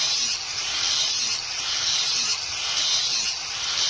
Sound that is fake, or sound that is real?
real